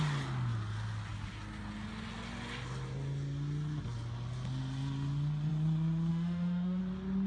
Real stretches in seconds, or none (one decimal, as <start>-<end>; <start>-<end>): 0.0-6.1; 6.8-7.3